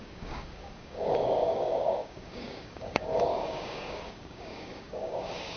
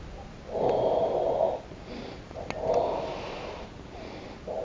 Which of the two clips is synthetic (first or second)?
first